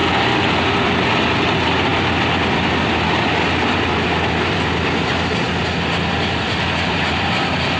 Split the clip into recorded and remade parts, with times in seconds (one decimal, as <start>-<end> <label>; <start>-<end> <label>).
0.0-7.8 recorded